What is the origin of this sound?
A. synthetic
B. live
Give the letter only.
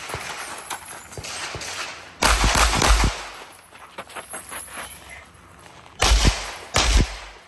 B